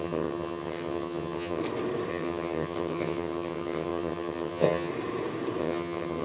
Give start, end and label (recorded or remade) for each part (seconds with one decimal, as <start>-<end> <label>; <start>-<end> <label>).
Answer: 0.0-1.6 remade; 1.6-2.1 recorded; 2.1-4.9 remade; 4.9-5.6 recorded; 5.6-6.2 remade